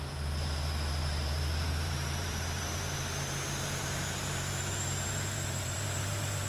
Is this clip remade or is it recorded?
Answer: remade